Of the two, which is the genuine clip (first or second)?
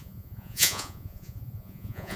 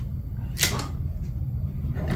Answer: second